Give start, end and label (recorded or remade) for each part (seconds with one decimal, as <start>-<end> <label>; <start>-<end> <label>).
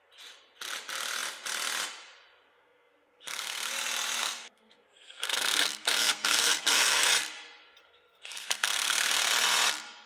0.0-2.5 recorded; 2.5-3.7 remade; 3.7-4.2 recorded; 4.2-7.1 remade; 7.1-7.8 recorded; 7.8-9.3 remade; 9.3-10.1 recorded